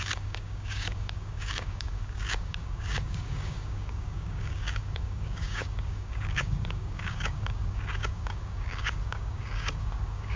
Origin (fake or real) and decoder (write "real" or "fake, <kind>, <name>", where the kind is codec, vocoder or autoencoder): fake, codec, DAC